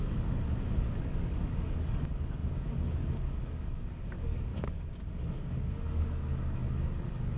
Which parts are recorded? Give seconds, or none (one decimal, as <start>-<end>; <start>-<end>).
4.5-5.1